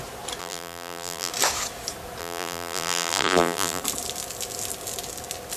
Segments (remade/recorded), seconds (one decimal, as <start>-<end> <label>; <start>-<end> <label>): 0.0-0.4 recorded; 0.4-1.3 remade; 1.3-2.2 recorded; 2.2-3.8 remade; 3.8-5.6 recorded